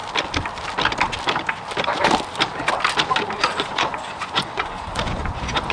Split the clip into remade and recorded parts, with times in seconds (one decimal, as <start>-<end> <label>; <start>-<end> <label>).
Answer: 0.0-3.4 recorded; 3.4-5.7 remade